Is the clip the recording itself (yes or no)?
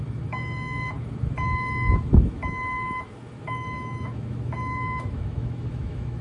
no